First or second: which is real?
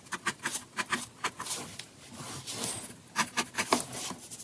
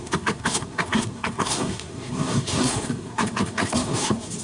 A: first